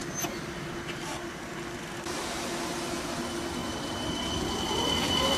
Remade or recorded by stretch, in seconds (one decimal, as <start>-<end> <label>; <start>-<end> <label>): 0.0-5.4 recorded